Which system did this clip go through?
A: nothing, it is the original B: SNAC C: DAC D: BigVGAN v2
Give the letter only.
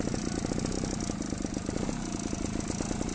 A